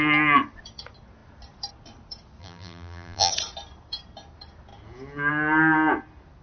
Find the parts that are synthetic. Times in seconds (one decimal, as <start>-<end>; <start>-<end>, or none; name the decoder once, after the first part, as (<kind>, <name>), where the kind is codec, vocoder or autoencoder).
2.4-3.3 (vocoder, BigVGAN v2)